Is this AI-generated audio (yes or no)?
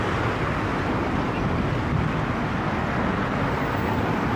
no